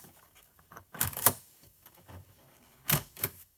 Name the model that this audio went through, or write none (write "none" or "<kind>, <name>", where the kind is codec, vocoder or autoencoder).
codec, DAC